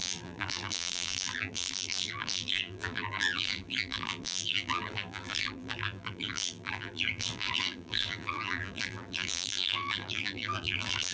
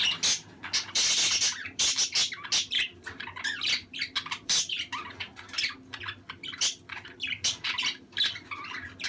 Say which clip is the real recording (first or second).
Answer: second